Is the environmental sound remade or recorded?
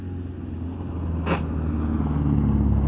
recorded